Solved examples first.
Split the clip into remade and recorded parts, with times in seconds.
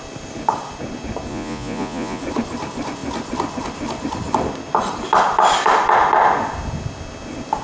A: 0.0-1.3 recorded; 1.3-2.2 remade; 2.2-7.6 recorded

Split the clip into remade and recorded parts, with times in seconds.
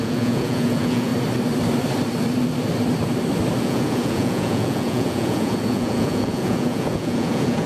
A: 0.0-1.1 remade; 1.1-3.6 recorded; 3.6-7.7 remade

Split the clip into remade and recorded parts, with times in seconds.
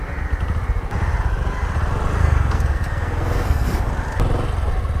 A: 0.0-2.2 recorded; 2.2-3.9 remade; 3.9-5.0 recorded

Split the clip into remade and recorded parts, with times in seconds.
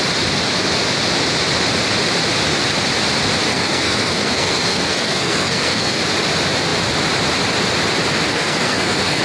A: 0.0-3.5 recorded; 3.5-6.0 remade; 6.0-8.3 recorded; 8.3-9.2 remade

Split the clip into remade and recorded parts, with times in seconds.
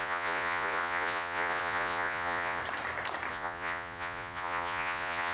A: 0.0-2.6 remade; 2.6-3.3 recorded; 3.3-5.3 remade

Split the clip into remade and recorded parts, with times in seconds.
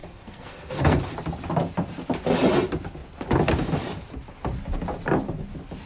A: 0.0-1.0 remade; 1.0-5.9 recorded